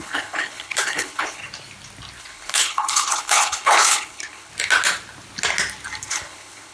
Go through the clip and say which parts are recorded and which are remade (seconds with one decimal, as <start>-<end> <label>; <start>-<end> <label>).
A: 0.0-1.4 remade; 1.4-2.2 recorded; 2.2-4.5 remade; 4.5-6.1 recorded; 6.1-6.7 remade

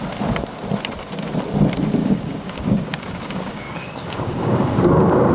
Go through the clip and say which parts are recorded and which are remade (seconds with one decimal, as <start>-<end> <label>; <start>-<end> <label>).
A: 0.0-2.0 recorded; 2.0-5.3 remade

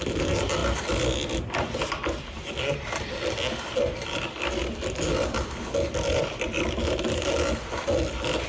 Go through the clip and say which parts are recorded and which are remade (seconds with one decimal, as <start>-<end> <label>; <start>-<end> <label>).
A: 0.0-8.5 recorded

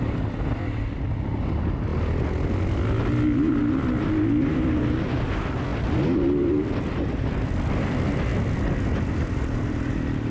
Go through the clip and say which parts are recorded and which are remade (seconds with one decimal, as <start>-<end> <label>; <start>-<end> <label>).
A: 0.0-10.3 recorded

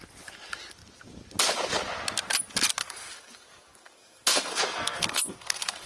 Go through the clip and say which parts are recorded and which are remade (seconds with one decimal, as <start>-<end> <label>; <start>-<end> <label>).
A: 0.0-2.8 recorded; 2.8-5.9 remade

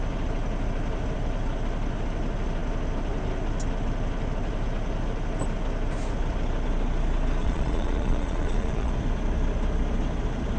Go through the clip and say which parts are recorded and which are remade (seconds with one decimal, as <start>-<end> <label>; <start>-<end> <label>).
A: 0.0-7.4 recorded; 7.4-8.9 remade; 8.9-10.6 recorded